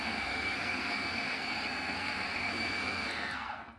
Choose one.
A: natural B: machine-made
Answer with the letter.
B